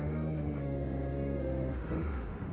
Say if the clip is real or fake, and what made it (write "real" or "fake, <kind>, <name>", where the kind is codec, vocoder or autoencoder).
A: fake, autoencoder, DAC-VAE